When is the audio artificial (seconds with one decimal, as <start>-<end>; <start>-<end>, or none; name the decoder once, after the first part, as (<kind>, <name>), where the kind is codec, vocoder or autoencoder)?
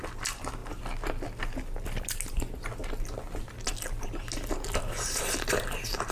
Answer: none